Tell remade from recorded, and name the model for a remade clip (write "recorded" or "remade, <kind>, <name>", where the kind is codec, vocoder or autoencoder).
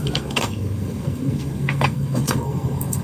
remade, codec, SNAC